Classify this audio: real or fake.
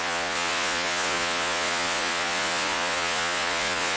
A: fake